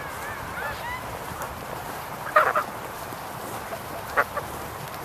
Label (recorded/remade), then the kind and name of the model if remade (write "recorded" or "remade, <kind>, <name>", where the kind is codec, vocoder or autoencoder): recorded